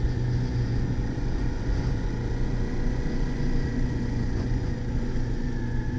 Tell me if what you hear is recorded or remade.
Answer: remade